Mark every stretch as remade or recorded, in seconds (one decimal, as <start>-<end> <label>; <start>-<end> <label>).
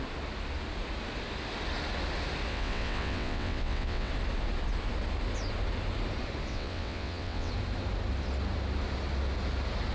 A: 0.0-2.5 recorded; 2.5-4.1 remade; 4.1-6.5 recorded; 6.5-7.5 remade; 7.5-9.9 recorded